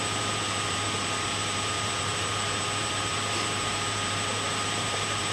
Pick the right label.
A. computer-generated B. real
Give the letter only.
A